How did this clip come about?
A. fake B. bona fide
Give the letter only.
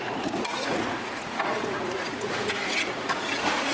A